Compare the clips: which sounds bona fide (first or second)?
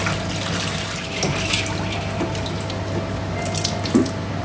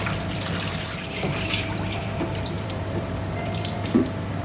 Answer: first